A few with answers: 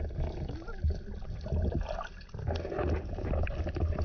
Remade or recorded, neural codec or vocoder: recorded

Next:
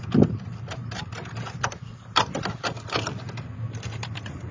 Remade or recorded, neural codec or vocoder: remade, vocoder, BigVGAN v2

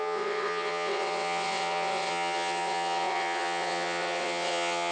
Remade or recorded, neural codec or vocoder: remade, vocoder, WaveNeXt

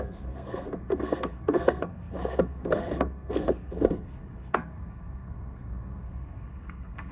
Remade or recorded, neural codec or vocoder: remade, codec, SNAC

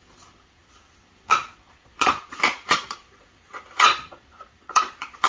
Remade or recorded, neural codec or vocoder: remade, vocoder, Vocos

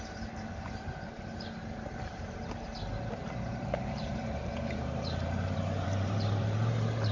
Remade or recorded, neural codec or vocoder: remade, vocoder, BigVGAN v2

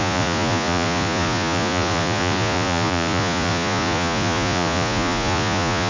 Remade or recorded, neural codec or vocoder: remade, vocoder, Vocos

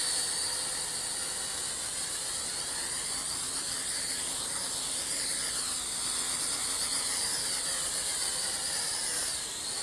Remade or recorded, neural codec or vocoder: recorded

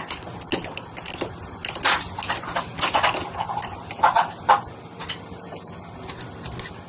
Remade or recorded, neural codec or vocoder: recorded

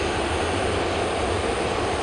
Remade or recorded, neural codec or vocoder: recorded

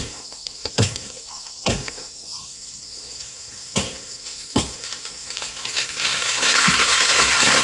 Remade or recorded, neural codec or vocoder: remade, codec, SNAC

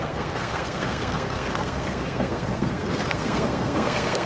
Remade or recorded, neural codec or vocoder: remade, codec, SNAC